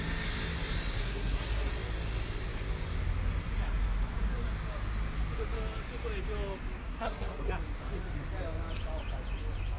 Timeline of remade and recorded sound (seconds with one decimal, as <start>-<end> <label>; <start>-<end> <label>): 0.0-1.0 recorded; 1.0-1.7 remade; 1.7-6.9 recorded; 6.9-7.5 remade; 7.5-9.8 recorded